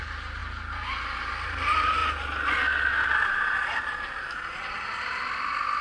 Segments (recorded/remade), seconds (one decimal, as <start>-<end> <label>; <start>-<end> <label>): 0.0-5.8 recorded